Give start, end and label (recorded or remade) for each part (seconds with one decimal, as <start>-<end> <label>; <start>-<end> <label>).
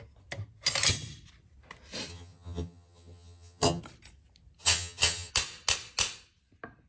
0.0-2.1 recorded; 2.1-3.8 remade; 3.8-4.6 recorded; 4.6-5.3 remade; 5.3-6.9 recorded